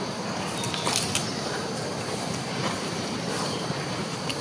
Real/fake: fake